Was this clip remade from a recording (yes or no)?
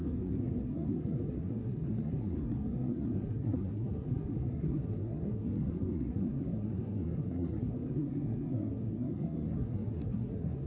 yes